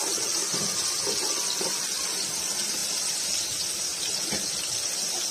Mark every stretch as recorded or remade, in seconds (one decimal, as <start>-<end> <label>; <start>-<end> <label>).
0.0-5.3 recorded